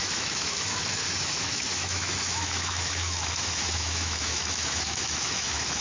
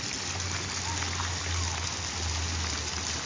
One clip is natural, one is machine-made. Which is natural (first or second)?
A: second